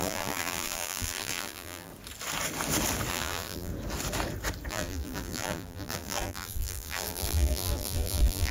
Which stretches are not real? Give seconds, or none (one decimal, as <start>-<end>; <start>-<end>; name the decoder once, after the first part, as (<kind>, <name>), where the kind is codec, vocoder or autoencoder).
0.0-1.9 (vocoder, BigVGAN v2); 3.1-3.7; 4.7-8.5